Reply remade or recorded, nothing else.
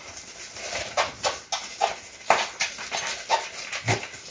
recorded